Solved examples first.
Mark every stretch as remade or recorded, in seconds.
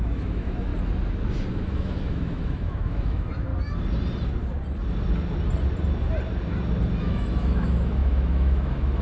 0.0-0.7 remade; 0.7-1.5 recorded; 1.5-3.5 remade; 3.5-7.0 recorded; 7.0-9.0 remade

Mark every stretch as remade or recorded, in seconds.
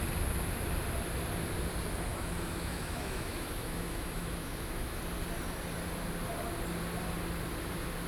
0.0-2.1 recorded; 2.1-5.0 remade; 5.0-8.1 recorded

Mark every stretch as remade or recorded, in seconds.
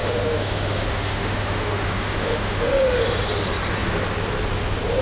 0.0-3.0 remade; 3.0-5.0 recorded